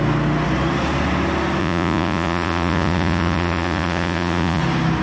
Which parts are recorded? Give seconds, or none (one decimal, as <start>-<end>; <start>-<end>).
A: 0.0-1.6; 4.6-5.0